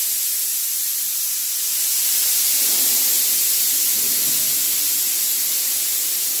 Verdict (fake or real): real